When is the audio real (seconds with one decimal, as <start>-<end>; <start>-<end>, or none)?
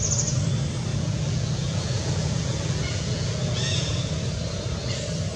0.0-0.9; 4.1-5.4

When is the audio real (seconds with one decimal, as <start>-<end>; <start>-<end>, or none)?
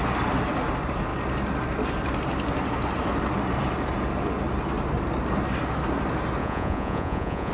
0.0-6.4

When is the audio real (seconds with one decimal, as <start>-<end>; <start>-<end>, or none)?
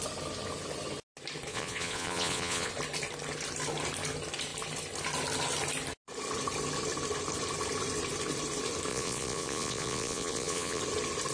0.0-1.5; 2.7-8.9; 10.8-11.3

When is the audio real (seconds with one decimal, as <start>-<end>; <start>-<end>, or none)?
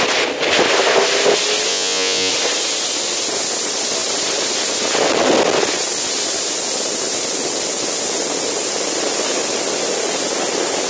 0.0-1.7; 2.3-10.9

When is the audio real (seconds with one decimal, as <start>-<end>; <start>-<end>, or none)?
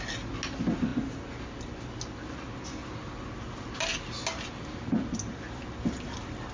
0.0-6.5